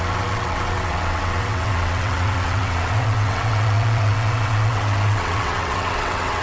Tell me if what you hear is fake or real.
fake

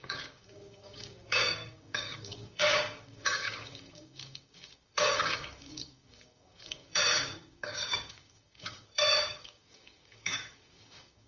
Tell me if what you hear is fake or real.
fake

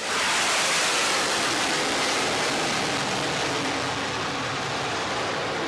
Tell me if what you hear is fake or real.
real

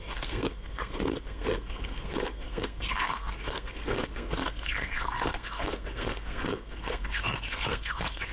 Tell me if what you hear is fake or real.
fake